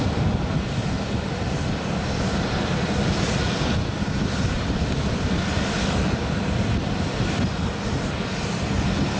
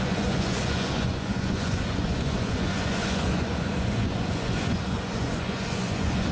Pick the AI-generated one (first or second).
second